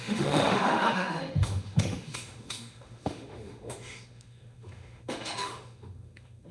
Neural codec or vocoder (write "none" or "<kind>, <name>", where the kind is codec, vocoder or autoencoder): autoencoder, DAC-VAE